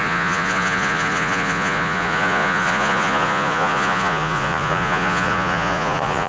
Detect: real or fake fake